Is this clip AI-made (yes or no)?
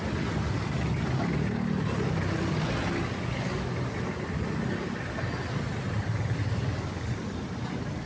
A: no